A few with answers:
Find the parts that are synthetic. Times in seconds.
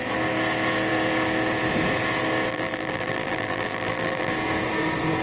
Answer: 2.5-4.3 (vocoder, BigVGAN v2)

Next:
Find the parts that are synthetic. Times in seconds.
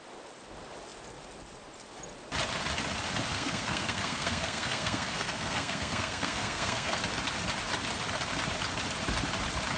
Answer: 3.3-7.0 (codec, SNAC)